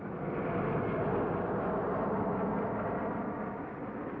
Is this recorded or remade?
recorded